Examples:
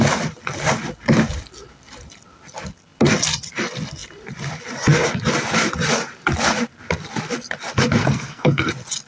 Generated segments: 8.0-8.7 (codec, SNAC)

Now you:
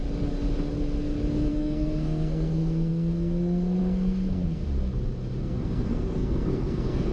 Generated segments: 1.5-4.6 (codec, SNAC); 5.4-7.1

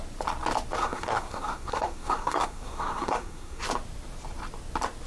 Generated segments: 0.8-3.6 (codec, SNAC)

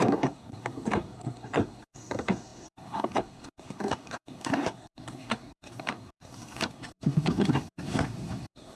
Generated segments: 0.0-8.8 (codec, SNAC)